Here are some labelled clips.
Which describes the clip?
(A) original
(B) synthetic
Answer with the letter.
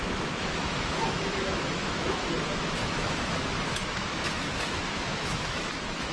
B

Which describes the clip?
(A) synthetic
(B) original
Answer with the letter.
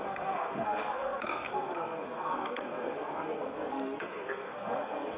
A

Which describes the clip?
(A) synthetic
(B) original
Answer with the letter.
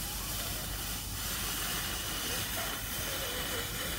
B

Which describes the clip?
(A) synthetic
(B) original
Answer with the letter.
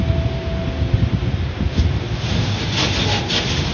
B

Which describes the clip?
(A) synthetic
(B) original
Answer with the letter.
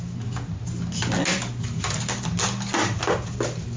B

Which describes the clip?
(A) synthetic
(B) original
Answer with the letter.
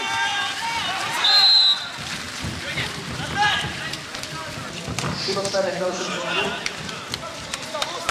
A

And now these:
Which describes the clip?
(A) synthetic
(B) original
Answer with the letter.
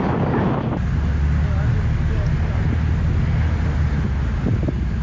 B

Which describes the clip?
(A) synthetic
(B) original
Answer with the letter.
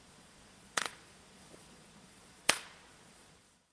A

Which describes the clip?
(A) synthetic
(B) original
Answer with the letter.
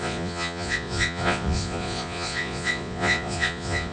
A